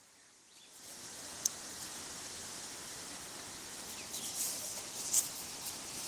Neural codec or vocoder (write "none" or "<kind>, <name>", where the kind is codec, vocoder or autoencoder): none